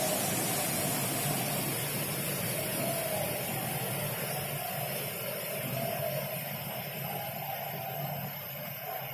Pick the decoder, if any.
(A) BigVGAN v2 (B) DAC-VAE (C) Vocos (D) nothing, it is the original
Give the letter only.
D